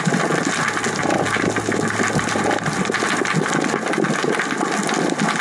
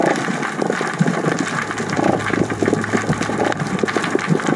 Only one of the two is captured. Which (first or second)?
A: first